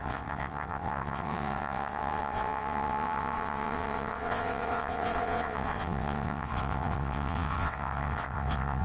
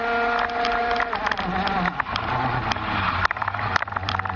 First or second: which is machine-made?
first